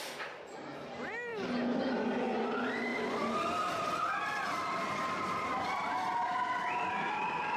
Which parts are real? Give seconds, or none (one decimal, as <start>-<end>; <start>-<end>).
0.0-7.6